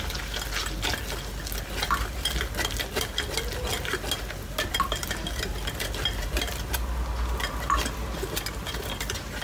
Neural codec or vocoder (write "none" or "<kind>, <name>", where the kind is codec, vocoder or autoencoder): none